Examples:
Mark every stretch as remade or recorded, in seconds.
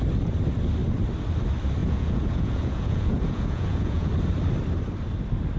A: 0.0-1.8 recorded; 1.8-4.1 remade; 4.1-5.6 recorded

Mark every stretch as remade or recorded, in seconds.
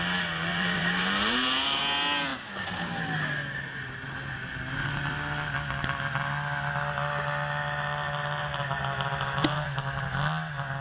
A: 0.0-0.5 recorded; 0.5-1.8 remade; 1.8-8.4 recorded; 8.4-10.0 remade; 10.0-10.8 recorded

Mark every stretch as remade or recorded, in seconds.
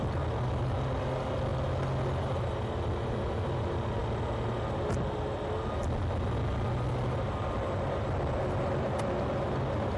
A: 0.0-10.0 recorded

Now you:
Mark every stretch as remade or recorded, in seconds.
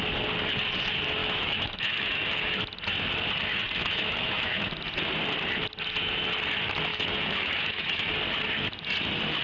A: 0.0-1.2 recorded; 1.2-2.6 remade; 2.6-3.8 recorded; 3.8-4.7 remade; 4.7-6.9 recorded; 6.9-8.1 remade; 8.1-9.4 recorded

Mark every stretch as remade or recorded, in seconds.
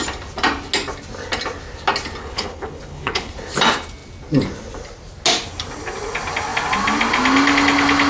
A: 0.0-2.2 recorded; 2.2-3.3 remade; 3.3-8.1 recorded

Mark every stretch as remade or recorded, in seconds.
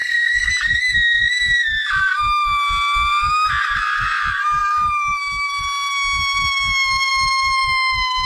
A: 0.0-0.5 remade; 0.5-8.3 recorded